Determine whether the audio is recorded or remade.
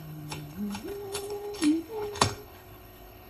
remade